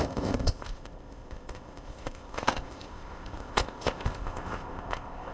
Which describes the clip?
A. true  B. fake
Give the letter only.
B